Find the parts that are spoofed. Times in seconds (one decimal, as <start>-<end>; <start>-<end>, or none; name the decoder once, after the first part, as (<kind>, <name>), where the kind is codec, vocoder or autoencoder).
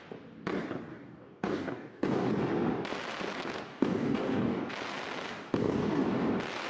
0.9-2.3 (codec, DAC); 3.7-4.7; 5.6-6.3